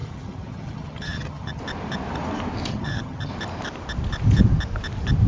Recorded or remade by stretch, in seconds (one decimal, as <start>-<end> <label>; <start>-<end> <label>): 0.0-1.6 remade; 1.6-2.7 recorded; 2.7-3.3 remade; 3.3-5.3 recorded